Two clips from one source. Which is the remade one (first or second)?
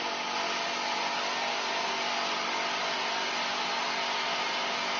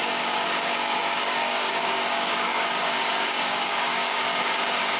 second